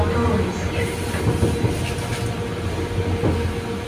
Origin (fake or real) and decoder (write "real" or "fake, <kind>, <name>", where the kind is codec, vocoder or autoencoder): real